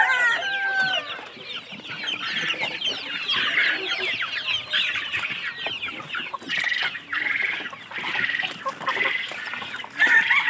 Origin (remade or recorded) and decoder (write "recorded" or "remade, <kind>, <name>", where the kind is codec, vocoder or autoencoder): recorded